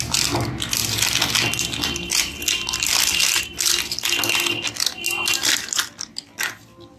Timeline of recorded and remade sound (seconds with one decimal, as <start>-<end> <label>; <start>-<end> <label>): 0.0-7.0 recorded